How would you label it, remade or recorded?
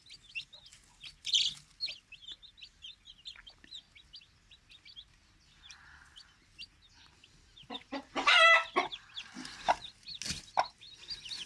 recorded